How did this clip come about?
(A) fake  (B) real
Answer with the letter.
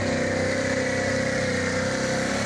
B